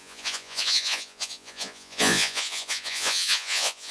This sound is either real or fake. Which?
fake